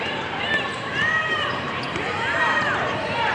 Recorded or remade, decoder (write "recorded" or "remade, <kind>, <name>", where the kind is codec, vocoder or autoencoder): remade, vocoder, BigVGAN v2